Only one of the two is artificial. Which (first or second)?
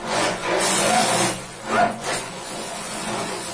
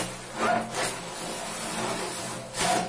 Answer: first